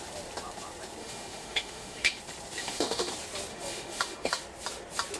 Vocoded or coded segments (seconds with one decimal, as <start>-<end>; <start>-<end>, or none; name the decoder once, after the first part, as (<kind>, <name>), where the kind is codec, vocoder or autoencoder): 1.0-2.2 (autoencoder, DAC-VAE); 2.6-3.1; 3.5-4.4